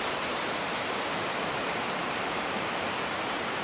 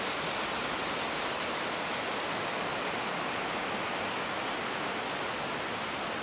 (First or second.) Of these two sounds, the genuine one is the second